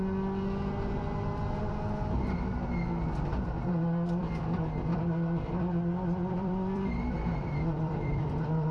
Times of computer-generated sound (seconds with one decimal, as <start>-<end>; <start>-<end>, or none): 3.3-4.4; 4.9-8.7